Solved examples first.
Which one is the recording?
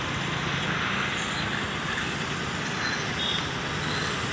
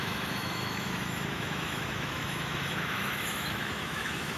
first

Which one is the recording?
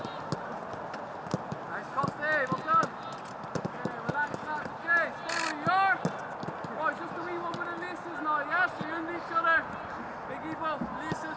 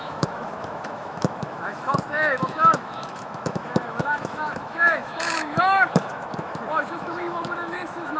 first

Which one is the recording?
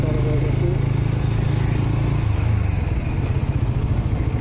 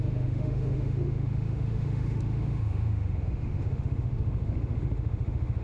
first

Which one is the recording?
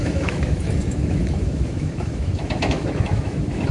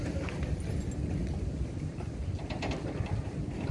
second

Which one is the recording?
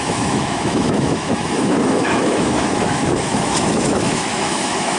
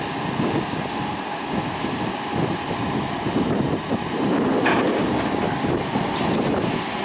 second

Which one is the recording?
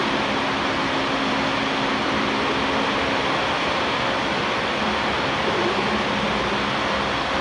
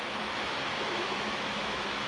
first